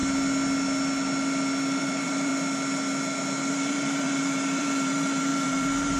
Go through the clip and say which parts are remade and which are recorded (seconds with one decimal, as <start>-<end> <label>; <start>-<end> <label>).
0.0-1.8 recorded; 1.8-2.3 remade; 2.3-3.5 recorded; 3.5-6.0 remade